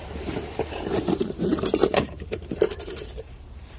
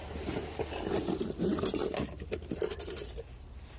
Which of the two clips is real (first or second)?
second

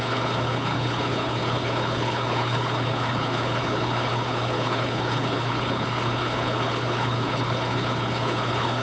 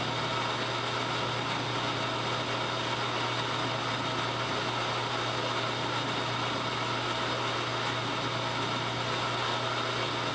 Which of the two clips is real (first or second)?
second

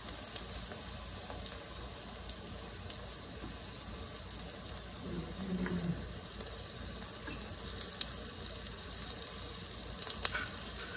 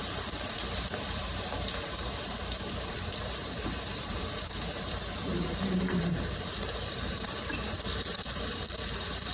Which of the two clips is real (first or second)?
first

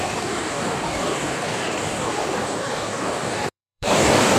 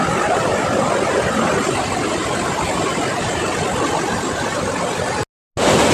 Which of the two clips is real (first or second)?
second